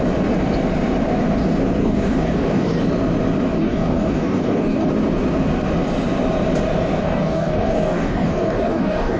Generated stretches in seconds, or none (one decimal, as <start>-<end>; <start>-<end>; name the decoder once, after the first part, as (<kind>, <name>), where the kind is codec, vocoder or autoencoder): 1.8-2.8 (codec, DAC); 3.6-4.9; 7.0-9.2